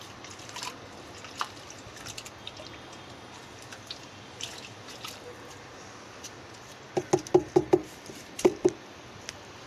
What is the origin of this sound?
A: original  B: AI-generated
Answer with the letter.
A